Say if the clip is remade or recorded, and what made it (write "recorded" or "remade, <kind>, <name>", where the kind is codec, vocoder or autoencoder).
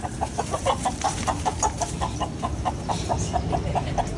recorded